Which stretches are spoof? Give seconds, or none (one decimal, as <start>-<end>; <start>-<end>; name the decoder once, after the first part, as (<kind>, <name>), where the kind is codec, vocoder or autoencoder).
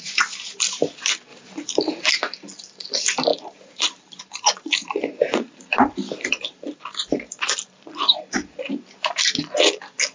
1.3-2.1 (vocoder, BigVGAN v2); 3.3-7.7